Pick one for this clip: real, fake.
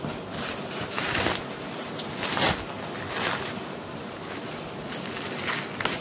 real